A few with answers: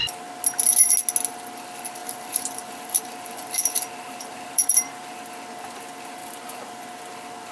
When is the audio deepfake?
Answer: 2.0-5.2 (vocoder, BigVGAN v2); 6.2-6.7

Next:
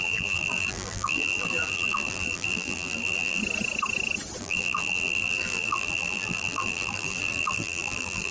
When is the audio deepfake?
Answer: 0.0-3.4 (vocoder, BigVGAN v2); 4.4-8.3

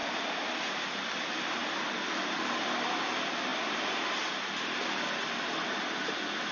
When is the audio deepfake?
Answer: none

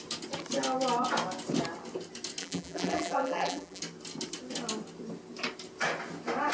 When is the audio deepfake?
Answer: 2.4-3.8 (vocoder, BigVGAN v2)

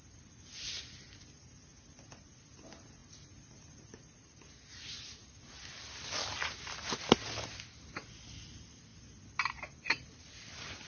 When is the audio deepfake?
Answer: 3.0-3.8 (vocoder, BigVGAN v2); 8.9-10.9

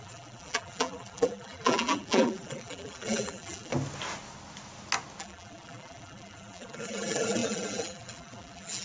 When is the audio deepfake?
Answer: 0.0-3.7 (vocoder, BigVGAN v2); 5.2-8.8

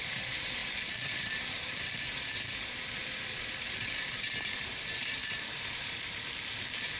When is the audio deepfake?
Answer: 0.0-7.0 (vocoder, BigVGAN v2)

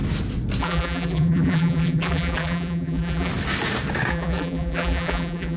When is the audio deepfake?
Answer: 0.6-3.3 (vocoder, BigVGAN v2); 4.1-5.6